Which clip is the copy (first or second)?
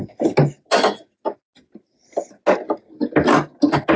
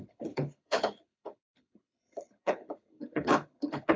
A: second